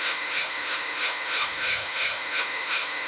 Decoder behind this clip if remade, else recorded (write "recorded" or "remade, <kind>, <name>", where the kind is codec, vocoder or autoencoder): remade, autoencoder, DAC-VAE